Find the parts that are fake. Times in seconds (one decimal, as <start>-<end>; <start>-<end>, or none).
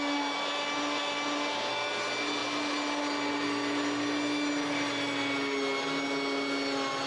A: none